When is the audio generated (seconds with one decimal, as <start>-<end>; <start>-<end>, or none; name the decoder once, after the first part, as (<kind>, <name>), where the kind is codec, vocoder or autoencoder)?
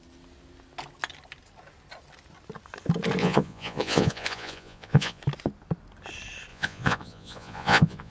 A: 3.2-5.2 (vocoder, Vocos); 6.5-8.1